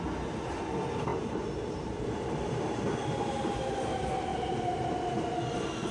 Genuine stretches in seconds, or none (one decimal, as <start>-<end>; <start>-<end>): 0.0-1.1; 2.1-4.3; 4.9-5.9